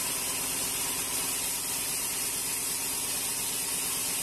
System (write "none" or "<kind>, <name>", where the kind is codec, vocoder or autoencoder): none